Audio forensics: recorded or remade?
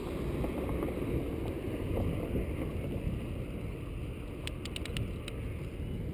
recorded